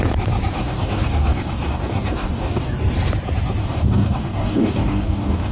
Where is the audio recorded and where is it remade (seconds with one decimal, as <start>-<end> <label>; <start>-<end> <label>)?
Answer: 0.0-0.6 recorded; 0.6-2.7 remade; 2.7-3.6 recorded; 3.6-5.5 remade